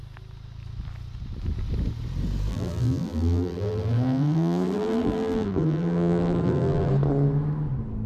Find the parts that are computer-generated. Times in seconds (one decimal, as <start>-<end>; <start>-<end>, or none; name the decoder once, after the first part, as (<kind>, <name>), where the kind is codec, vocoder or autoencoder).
2.5-6.9 (vocoder, BigVGAN v2)